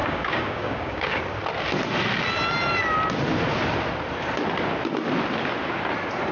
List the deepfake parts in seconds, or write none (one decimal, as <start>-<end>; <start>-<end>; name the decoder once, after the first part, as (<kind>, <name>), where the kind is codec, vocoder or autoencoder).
0.0-1.2 (codec, DAC)